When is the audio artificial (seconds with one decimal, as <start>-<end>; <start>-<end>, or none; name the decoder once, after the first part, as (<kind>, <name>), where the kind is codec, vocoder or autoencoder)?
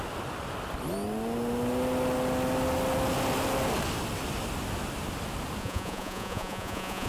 5.6-7.1 (vocoder, Vocos)